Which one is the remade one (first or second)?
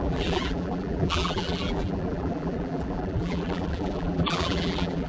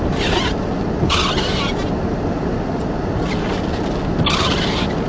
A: first